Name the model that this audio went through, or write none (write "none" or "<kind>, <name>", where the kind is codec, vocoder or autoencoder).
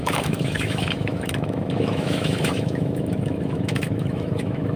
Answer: autoencoder, DAC-VAE